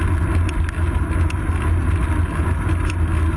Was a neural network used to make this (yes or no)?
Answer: no